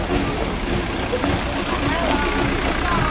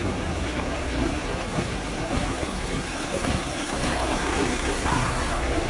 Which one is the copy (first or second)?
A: second